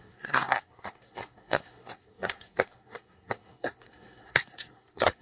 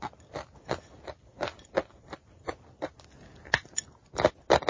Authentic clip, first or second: second